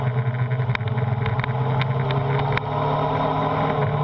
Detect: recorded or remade recorded